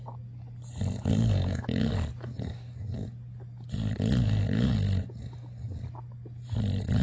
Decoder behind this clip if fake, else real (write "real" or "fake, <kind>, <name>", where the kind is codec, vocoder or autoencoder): real